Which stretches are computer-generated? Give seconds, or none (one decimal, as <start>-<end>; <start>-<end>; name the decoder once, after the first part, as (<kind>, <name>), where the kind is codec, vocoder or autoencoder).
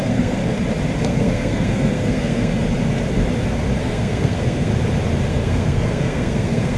0.0-0.4 (codec, SNAC); 1.0-2.5; 3.8-4.7; 5.3-6.8